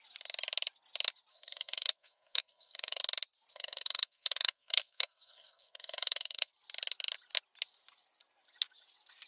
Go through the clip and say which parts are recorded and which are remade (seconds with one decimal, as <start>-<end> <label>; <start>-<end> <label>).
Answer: 0.0-1.3 recorded; 1.3-3.0 remade; 3.0-3.5 recorded; 3.5-6.5 remade; 6.5-9.3 recorded